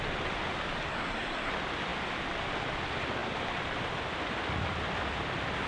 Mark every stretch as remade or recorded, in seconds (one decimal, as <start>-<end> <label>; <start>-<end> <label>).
0.0-0.9 recorded; 0.9-1.5 remade; 1.5-5.7 recorded